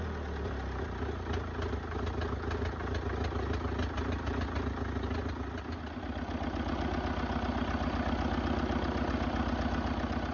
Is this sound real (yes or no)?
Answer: yes